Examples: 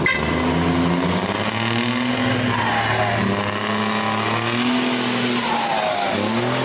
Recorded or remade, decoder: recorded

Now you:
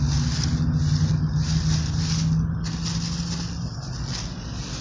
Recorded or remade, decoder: recorded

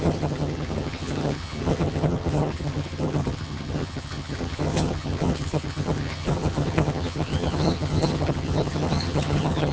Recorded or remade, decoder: remade, vocoder, HiFi-GAN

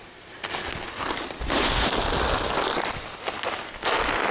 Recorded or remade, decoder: recorded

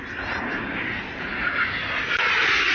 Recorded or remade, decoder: recorded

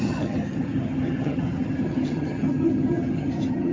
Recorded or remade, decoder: remade, vocoder, HiFi-GAN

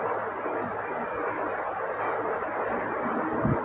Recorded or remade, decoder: recorded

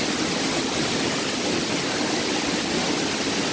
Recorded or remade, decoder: recorded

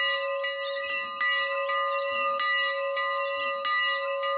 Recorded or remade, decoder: recorded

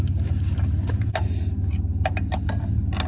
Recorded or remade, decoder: recorded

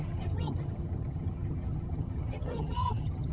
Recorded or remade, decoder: remade, vocoder, HiFi-GAN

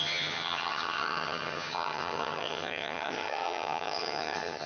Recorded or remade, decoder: remade, vocoder, HiFi-GAN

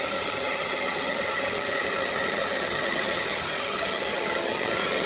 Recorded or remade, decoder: remade, vocoder, HiFi-GAN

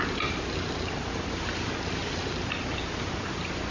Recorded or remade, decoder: recorded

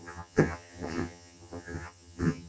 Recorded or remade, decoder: remade, vocoder, HiFi-GAN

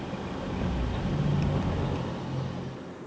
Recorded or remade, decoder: recorded